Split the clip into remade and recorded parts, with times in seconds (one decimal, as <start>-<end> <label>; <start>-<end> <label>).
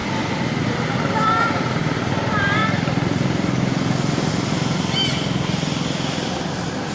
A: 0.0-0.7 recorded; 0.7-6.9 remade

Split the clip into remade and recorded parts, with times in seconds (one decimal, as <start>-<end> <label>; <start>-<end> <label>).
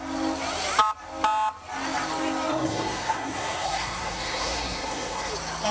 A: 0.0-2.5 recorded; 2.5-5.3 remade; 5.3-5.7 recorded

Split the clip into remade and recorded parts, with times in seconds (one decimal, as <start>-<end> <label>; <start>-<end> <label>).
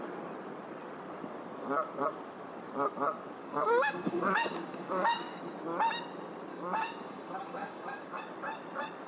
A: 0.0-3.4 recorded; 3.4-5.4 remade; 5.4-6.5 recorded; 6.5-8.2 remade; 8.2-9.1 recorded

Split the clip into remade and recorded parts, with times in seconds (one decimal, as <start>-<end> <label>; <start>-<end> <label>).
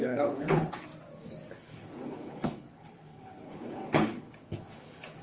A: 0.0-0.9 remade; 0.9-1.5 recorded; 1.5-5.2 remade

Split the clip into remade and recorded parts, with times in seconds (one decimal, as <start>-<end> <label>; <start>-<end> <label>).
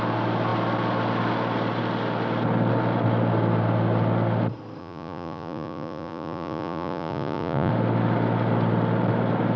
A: 0.0-4.8 recorded; 4.8-7.7 remade; 7.7-9.6 recorded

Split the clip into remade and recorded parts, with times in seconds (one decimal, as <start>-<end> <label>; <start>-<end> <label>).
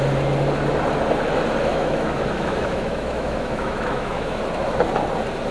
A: 0.0-1.7 recorded; 1.7-4.4 remade; 4.4-5.5 recorded